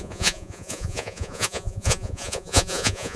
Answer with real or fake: fake